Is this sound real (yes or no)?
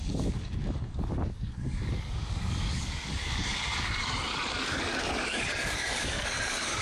no